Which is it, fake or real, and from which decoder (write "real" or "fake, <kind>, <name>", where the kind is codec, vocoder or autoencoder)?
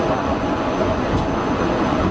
fake, vocoder, Vocos